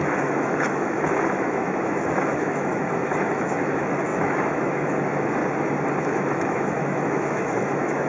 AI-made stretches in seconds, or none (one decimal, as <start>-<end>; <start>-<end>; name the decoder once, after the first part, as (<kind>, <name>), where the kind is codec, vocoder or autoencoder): 0.0-5.4 (autoencoder, DAC-VAE); 6.0-8.1